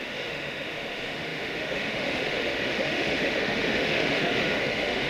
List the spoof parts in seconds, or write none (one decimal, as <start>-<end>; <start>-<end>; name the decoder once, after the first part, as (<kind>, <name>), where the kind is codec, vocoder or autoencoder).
0.0-5.1 (autoencoder, DAC-VAE)